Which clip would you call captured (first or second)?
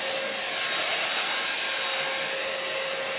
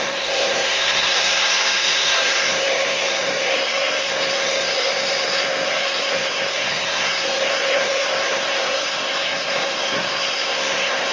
first